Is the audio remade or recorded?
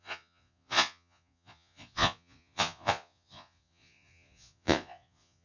remade